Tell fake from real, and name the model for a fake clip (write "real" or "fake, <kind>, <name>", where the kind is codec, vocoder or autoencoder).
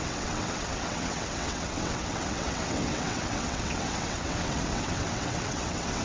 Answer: fake, vocoder, WaveNeXt